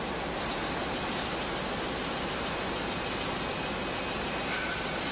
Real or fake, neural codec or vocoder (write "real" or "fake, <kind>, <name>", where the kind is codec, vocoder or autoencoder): real